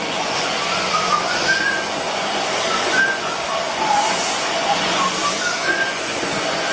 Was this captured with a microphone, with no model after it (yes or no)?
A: no